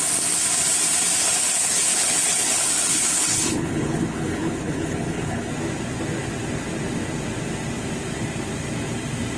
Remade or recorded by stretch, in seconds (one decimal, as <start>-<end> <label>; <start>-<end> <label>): 0.0-1.2 recorded; 1.2-5.5 remade; 5.5-9.4 recorded

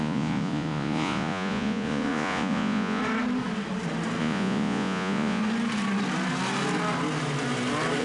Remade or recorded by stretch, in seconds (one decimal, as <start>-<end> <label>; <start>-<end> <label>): 0.0-3.0 remade; 3.0-4.2 recorded; 4.2-5.4 remade; 5.4-8.0 recorded

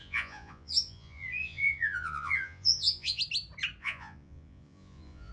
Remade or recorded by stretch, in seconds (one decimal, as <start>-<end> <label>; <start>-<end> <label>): 0.0-3.2 remade; 3.2-3.8 recorded; 3.8-5.3 remade

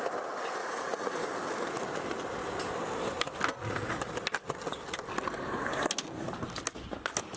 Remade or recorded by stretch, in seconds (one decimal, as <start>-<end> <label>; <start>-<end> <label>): 0.0-0.6 recorded; 0.6-1.2 remade; 1.2-7.4 recorded

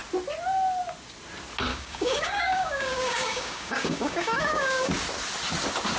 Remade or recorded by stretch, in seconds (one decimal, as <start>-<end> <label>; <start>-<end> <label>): 0.0-1.7 recorded; 1.7-4.9 remade; 4.9-6.0 recorded

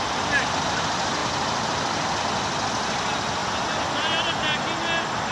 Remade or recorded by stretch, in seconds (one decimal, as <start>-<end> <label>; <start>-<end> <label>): 0.0-5.3 recorded

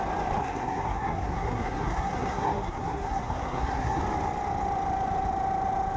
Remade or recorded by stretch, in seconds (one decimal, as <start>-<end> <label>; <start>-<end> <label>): 0.0-0.4 recorded; 0.4-4.0 remade; 4.0-6.0 recorded

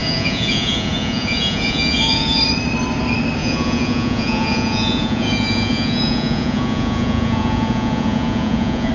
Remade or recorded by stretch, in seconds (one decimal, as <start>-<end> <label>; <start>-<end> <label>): 0.0-2.4 remade; 2.4-3.4 recorded; 3.4-8.9 remade